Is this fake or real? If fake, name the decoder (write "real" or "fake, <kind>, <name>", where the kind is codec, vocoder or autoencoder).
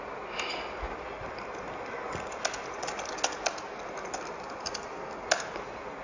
real